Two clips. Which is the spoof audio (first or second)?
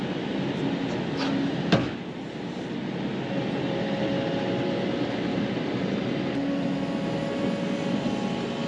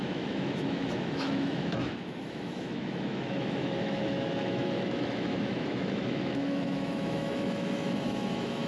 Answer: second